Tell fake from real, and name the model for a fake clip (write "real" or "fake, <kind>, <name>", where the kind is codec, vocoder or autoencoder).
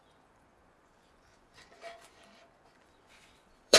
fake, vocoder, Vocos